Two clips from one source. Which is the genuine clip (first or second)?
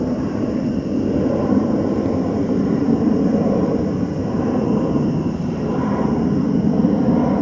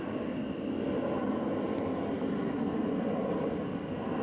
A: second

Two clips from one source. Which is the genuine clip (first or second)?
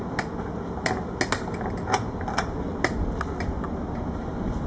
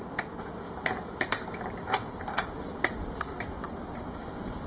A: first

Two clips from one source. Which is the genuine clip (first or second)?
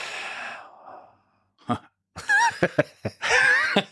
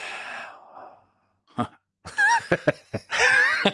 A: second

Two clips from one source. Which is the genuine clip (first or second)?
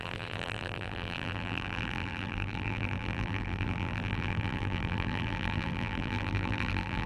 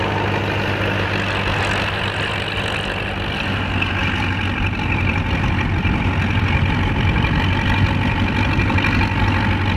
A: second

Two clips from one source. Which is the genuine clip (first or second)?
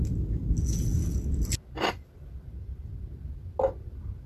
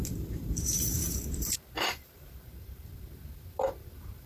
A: first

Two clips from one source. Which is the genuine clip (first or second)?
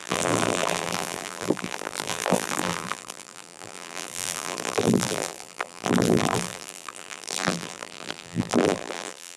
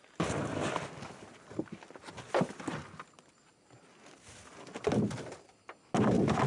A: second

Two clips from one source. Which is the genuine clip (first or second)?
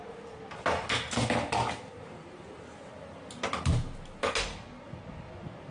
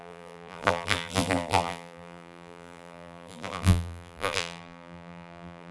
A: first